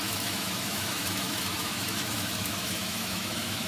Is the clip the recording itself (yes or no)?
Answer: no